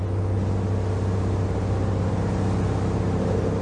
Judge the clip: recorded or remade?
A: recorded